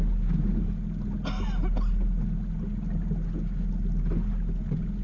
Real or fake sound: real